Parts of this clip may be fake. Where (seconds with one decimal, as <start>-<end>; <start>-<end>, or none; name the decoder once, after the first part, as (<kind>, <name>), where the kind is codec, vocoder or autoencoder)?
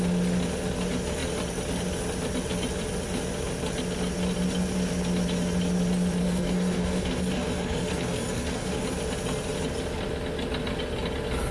6.2-8.8 (codec, SNAC)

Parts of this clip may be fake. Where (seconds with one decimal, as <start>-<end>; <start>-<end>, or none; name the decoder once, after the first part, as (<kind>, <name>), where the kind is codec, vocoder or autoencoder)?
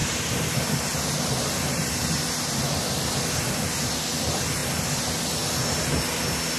none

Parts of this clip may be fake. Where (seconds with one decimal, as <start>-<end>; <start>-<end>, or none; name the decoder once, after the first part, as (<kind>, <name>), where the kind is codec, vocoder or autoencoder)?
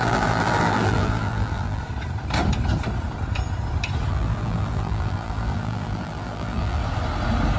0.0-1.8 (vocoder, BigVGAN v2); 4.1-6.8